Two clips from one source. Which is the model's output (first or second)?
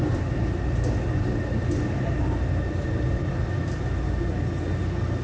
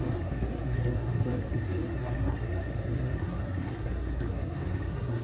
second